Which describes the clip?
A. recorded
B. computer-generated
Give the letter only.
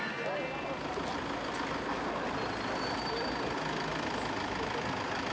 A